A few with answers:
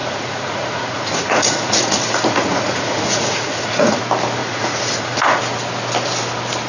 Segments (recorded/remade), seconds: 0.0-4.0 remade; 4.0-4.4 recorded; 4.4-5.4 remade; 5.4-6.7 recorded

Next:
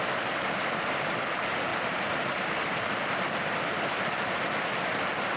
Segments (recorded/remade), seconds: 0.0-5.4 recorded